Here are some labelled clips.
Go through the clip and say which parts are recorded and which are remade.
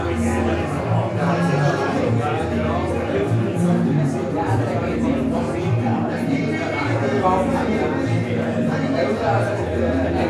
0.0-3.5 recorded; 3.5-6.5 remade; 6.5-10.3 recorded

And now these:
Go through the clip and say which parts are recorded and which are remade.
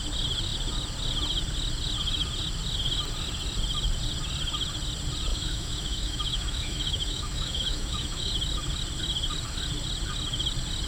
0.0-5.3 recorded; 5.3-8.3 remade; 8.3-10.9 recorded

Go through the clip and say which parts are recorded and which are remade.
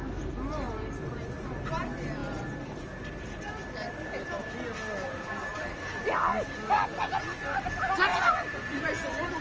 0.0-5.5 recorded; 5.5-6.1 remade; 6.1-8.1 recorded; 8.1-9.4 remade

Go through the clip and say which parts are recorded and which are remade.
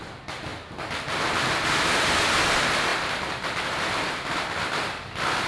0.0-5.5 recorded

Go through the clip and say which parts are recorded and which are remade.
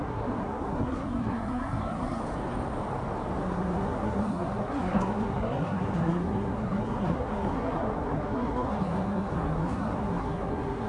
0.0-2.2 remade; 2.2-3.4 recorded; 3.4-10.9 remade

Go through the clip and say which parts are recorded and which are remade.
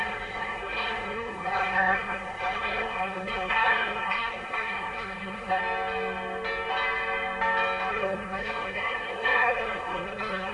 0.0-5.6 remade; 5.6-7.9 recorded; 7.9-10.5 remade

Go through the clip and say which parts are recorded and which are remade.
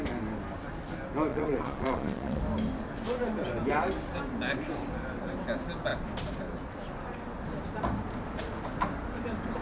0.0-1.3 recorded; 1.3-2.4 remade; 2.4-9.6 recorded